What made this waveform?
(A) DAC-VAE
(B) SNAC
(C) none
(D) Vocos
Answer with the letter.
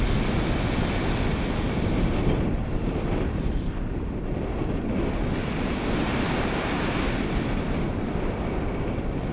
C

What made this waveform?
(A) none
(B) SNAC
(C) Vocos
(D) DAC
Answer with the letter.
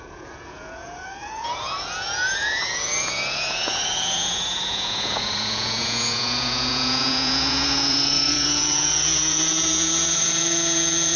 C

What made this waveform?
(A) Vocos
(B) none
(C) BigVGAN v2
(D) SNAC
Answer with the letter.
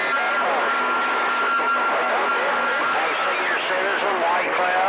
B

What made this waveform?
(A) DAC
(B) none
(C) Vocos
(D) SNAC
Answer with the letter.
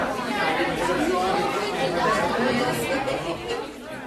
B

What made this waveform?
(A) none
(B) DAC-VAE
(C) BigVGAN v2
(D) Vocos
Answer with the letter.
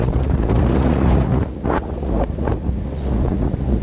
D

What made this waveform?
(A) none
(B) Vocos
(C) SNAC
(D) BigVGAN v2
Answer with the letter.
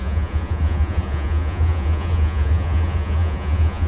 B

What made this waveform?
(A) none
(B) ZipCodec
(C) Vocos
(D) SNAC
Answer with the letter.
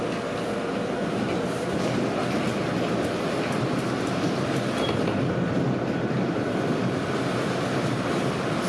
A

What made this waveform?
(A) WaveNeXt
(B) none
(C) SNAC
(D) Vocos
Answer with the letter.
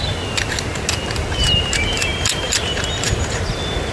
B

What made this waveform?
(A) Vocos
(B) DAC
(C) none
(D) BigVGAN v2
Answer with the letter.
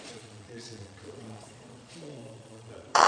A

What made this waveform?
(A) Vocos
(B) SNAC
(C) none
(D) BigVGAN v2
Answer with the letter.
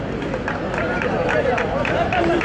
C